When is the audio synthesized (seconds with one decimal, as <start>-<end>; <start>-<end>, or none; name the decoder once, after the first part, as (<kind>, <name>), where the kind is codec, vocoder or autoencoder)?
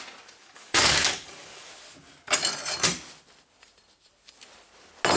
0.4-1.7 (codec, DAC)